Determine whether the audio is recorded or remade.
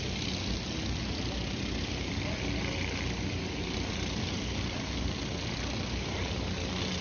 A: recorded